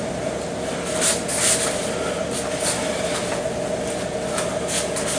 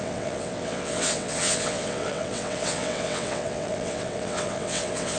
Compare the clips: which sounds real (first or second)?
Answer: first